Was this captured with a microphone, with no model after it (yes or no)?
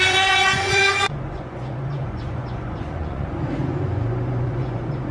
no